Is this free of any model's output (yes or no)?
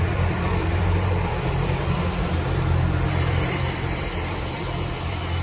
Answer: no